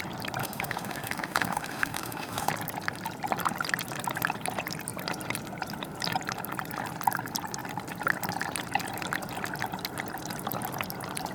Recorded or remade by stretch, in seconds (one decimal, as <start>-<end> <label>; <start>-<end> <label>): 0.0-0.4 recorded; 0.4-2.5 remade; 2.5-11.3 recorded